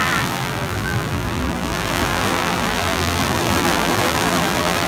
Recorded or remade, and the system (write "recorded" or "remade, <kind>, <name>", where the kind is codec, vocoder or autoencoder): remade, vocoder, BigVGAN v2